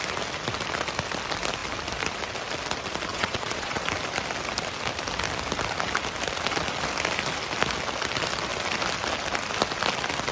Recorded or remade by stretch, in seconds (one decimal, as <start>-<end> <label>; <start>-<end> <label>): 0.0-3.1 recorded; 3.1-3.8 remade; 3.8-10.3 recorded